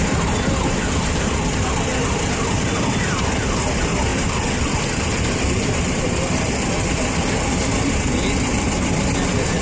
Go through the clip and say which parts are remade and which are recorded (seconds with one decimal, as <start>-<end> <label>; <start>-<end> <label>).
0.0-4.1 recorded; 4.1-8.1 remade; 8.1-9.6 recorded